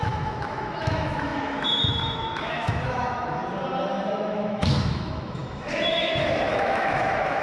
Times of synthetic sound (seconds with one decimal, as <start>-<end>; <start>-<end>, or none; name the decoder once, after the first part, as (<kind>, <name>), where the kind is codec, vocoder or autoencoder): 0.0-3.4 (autoencoder, DAC-VAE); 4.1-7.4